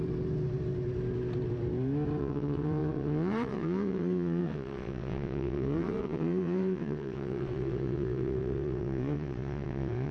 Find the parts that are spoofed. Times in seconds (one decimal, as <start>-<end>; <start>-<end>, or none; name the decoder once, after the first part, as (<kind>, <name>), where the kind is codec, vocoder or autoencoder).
2.2-10.1 (vocoder, WaveNeXt)